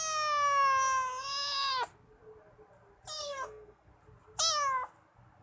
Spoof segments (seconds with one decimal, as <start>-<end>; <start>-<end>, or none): 3.2-3.9